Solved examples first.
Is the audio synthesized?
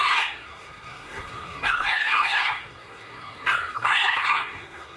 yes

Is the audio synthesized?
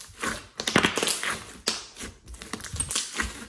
no